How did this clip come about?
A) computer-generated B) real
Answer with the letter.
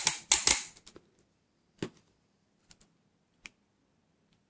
B